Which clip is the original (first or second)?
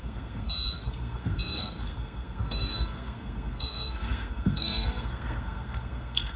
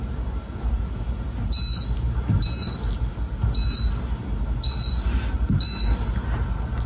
second